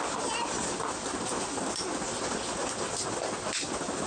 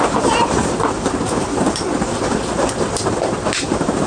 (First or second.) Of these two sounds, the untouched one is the first